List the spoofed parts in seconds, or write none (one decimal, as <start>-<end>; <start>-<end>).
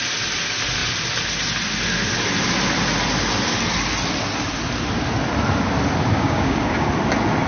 6.1-6.9